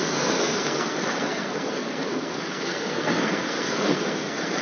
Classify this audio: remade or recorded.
remade